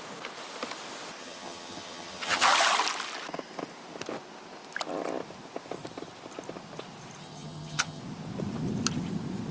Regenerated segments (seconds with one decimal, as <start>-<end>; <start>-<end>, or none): 1.2-2.5; 7.2-8.0